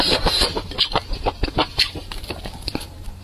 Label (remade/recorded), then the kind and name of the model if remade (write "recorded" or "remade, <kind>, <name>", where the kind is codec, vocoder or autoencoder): remade, vocoder, BigVGAN v2